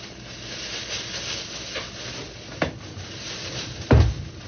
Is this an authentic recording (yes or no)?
yes